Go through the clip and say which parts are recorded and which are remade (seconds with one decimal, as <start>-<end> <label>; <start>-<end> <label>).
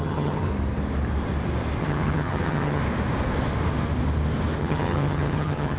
0.0-0.5 remade; 0.5-1.8 recorded; 1.8-2.8 remade; 2.8-4.6 recorded; 4.6-5.8 remade